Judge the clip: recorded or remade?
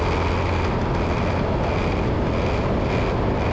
recorded